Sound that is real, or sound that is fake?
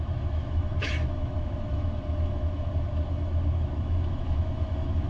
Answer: fake